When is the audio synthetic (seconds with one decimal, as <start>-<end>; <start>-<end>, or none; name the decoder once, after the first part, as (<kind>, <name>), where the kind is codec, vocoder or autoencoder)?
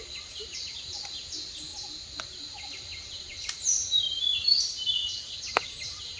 none